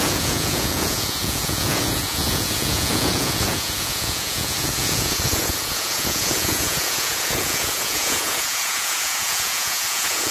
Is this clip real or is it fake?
fake